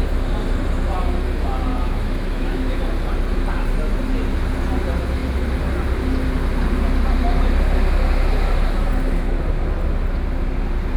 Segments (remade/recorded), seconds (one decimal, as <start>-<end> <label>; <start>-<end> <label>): 0.0-1.7 recorded; 1.7-2.8 remade; 2.8-11.0 recorded